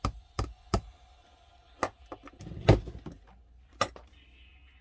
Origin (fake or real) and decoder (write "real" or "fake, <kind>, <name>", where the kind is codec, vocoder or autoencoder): real